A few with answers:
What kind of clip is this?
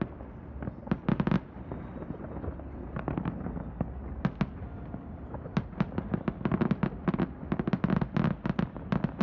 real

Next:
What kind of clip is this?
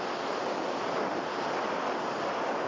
real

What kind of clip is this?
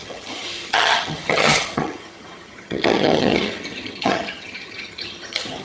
fake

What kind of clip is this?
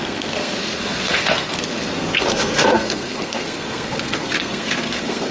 fake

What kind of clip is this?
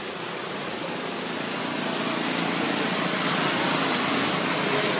real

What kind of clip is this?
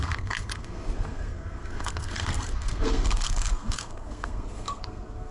fake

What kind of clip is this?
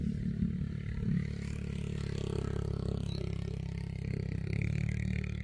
real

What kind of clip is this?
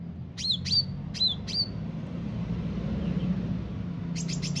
real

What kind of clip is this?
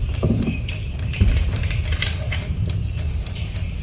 fake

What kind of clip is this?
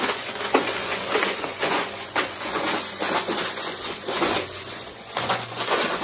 fake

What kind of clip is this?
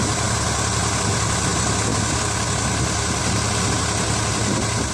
real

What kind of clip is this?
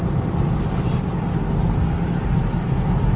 real